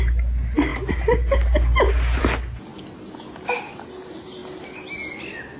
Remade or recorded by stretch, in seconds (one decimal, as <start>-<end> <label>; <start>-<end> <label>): 0.0-5.6 recorded